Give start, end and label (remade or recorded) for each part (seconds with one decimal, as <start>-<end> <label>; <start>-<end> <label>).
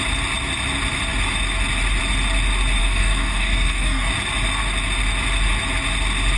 0.0-2.8 recorded; 2.8-4.1 remade; 4.1-6.4 recorded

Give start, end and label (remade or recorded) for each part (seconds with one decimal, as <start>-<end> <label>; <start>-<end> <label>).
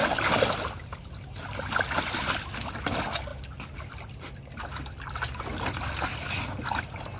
0.0-7.2 recorded